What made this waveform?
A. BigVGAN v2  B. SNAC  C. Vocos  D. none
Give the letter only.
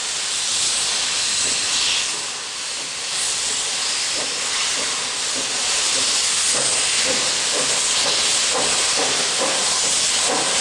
D